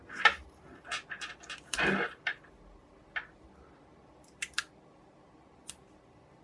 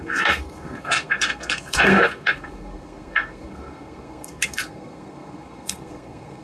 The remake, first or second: second